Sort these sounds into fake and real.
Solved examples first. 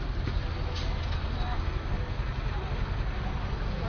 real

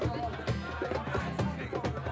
real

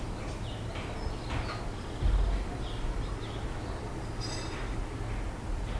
real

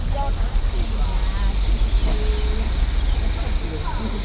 real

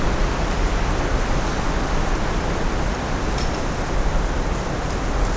real